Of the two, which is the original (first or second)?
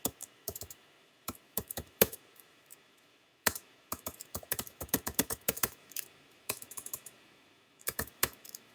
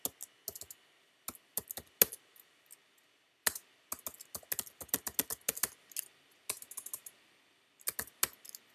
second